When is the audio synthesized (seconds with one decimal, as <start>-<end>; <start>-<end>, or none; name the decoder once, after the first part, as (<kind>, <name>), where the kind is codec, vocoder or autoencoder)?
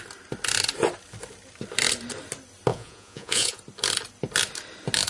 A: 2.7-3.6 (vocoder, Vocos)